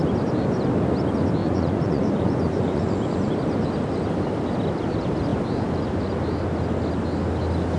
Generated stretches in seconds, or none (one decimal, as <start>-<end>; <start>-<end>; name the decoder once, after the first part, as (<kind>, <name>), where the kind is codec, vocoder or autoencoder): 1.4-3.3 (vocoder, Vocos)